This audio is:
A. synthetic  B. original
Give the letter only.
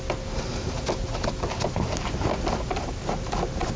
B